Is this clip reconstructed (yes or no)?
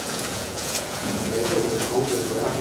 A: yes